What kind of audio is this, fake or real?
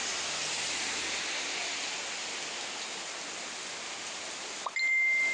real